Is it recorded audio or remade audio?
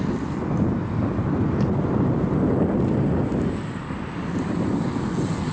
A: recorded